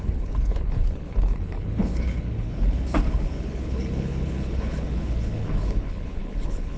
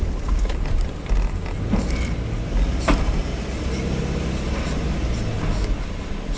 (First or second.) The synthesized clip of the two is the first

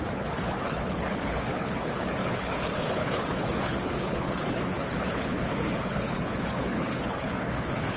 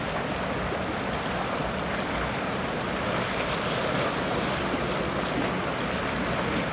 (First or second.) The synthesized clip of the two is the first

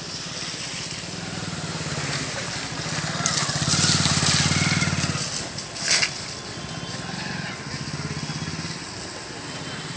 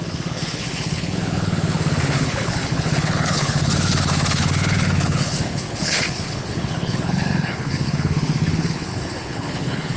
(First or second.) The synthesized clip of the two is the second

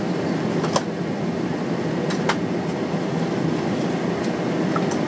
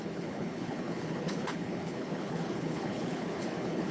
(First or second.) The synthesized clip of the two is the second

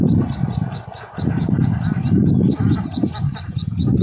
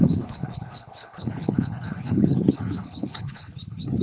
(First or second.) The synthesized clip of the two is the second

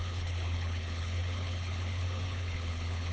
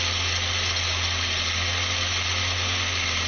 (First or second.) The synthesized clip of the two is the first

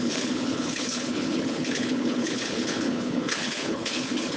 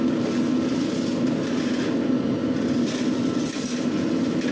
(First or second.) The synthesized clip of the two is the first